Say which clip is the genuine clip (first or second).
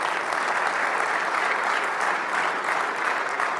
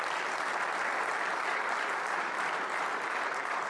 first